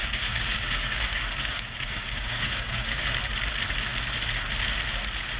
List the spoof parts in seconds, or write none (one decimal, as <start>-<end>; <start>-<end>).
0.0-3.2